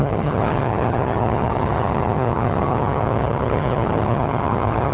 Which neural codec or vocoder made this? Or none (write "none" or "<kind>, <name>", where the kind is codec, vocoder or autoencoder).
vocoder, HiFi-GAN